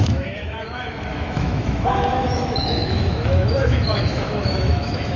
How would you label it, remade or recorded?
remade